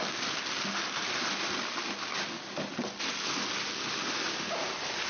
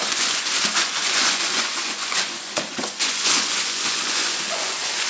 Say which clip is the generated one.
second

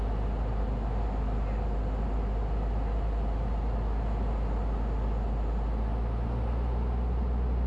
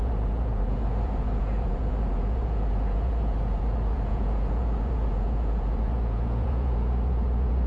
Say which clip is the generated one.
second